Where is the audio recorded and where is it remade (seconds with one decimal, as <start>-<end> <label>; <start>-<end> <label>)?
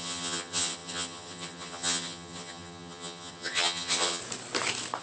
0.0-4.2 remade; 4.2-5.0 recorded